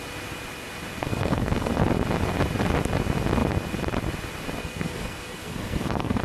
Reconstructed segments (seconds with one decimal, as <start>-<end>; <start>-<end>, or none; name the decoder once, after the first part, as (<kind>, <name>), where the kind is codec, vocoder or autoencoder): 1.0-1.7 (codec, SNAC); 4.6-6.2